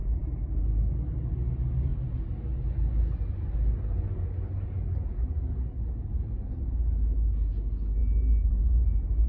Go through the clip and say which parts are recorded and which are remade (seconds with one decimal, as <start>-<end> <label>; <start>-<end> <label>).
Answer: 0.0-9.3 recorded